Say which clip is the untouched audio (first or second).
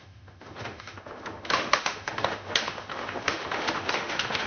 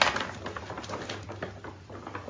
second